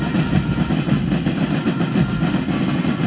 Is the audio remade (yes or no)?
no